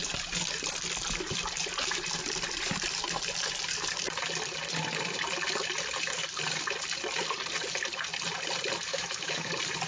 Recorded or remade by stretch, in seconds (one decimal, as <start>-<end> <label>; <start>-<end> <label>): 0.0-8.9 recorded; 8.9-9.5 remade; 9.5-9.9 recorded